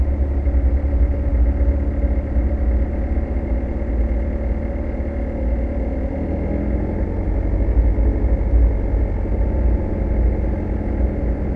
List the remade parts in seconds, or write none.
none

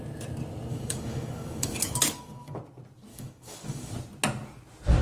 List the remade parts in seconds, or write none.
0.7-2.6; 3.1-3.9

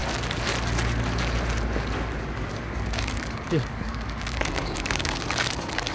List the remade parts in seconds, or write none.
2.2-5.9

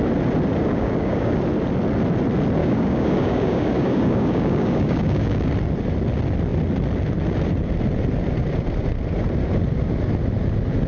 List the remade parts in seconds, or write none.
0.7-1.4; 2.6-5.5

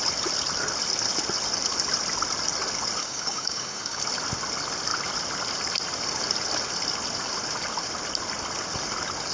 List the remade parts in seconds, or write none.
3.0-4.0

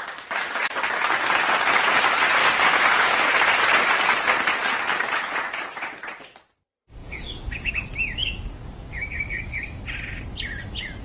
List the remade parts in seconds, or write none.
2.4-3.3; 7.0-7.7; 8.2-9.8

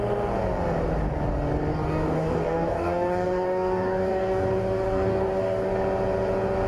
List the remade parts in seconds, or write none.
1.7-5.7